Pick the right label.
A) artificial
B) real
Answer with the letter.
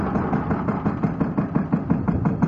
B